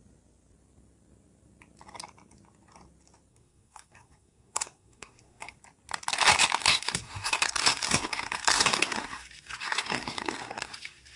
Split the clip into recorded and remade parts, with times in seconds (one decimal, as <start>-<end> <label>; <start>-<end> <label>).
0.0-3.3 recorded; 3.3-5.6 remade; 5.6-6.6 recorded; 6.6-11.2 remade